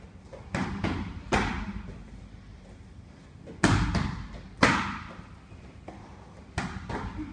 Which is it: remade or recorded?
recorded